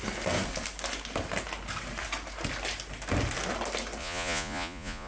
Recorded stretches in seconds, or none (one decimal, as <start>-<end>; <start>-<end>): 0.0-4.0

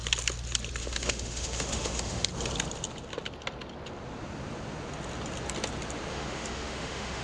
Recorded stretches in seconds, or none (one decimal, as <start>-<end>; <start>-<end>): 0.0-0.8; 2.3-6.1

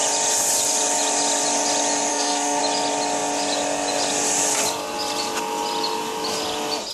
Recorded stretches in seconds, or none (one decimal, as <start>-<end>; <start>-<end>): 0.0-2.1; 2.6-6.9

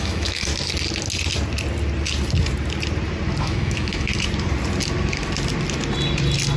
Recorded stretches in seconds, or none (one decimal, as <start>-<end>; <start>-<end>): 0.5-3.4; 4.1-6.6

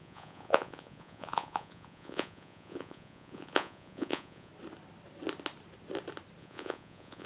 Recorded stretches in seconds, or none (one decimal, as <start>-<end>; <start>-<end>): 4.5-6.4

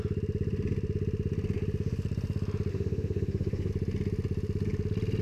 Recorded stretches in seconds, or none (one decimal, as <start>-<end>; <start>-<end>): 0.0-2.7; 3.7-5.2

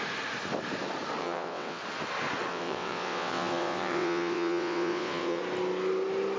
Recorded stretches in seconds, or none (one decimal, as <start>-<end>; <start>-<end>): 0.0-1.2; 1.8-2.5; 5.4-6.4

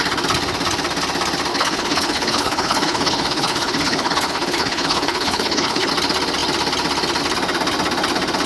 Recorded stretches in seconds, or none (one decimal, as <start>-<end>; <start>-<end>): 0.0-1.5; 5.9-8.5